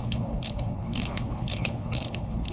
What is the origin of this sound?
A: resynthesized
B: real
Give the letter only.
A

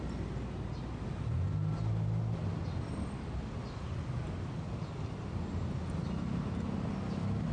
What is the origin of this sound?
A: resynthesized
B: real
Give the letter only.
B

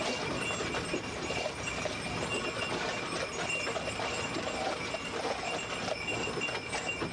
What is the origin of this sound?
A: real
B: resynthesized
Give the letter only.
A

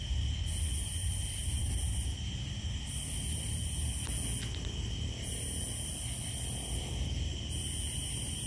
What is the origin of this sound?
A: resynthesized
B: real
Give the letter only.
B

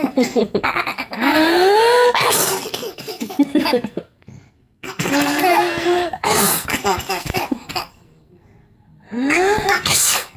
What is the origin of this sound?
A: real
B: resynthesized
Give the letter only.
B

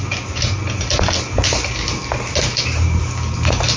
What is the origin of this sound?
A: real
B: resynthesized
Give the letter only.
A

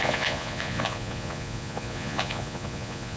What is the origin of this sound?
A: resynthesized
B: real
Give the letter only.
A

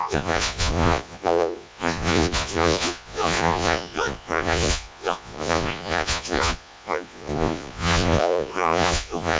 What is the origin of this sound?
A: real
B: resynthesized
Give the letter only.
B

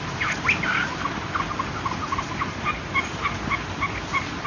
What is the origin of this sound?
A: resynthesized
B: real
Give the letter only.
B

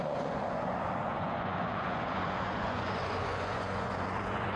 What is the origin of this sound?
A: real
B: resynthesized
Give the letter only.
B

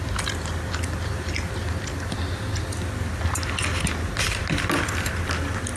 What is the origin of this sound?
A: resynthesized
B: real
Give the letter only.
B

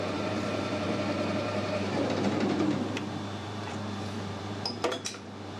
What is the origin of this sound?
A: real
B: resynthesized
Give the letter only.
B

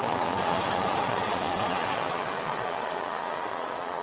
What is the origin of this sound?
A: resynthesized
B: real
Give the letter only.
A